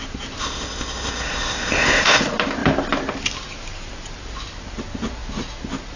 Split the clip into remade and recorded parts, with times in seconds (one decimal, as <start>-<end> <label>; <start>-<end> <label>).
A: 0.0-0.4 recorded; 0.4-2.2 remade; 2.2-6.0 recorded